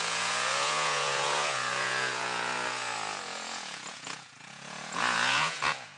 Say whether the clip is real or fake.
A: fake